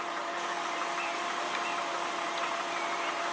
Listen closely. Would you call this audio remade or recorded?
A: recorded